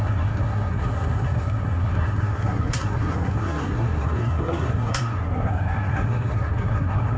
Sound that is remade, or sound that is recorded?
remade